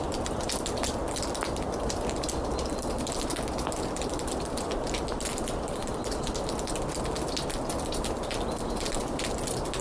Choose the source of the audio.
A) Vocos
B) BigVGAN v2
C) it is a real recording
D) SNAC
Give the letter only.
B